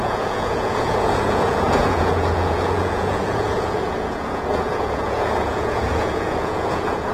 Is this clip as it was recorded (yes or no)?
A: no